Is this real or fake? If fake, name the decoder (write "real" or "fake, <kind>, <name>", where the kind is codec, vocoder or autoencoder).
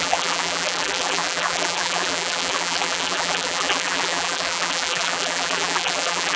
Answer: fake, vocoder, BigVGAN v2